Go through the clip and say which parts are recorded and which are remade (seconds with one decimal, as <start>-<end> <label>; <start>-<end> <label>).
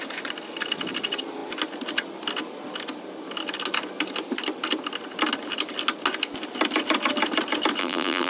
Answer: 0.0-7.8 recorded; 7.8-8.3 remade